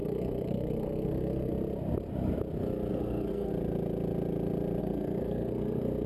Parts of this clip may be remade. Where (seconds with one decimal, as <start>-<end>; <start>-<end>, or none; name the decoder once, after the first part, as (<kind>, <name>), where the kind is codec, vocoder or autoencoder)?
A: 0.0-1.5 (codec, SNAC); 2.9-3.5; 4.8-6.1